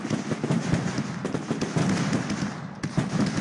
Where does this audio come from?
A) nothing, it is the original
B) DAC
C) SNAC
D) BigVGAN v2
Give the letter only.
D